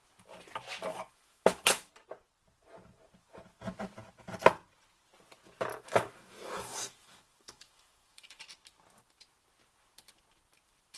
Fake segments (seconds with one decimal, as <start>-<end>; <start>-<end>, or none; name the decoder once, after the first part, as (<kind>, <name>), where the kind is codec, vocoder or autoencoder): 0.9-1.9 (autoencoder, DAC-VAE); 5.7-8.4